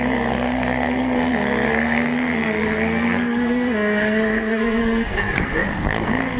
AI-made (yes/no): yes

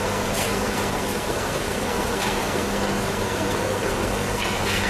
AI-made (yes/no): yes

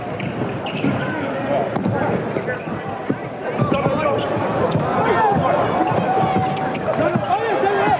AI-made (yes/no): no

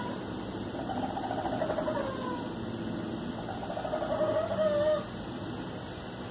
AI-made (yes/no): no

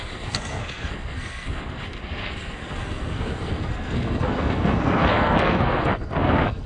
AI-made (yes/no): yes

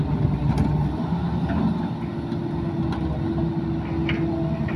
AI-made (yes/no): no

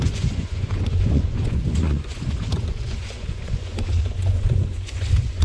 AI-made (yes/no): yes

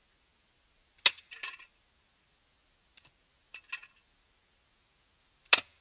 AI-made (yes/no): no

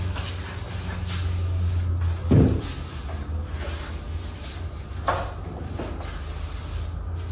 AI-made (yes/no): no